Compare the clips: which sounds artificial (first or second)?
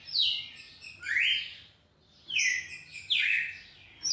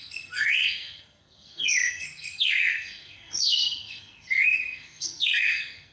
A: second